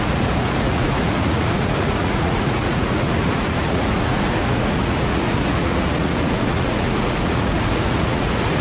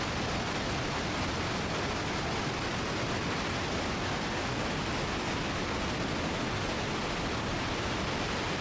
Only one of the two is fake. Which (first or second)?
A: first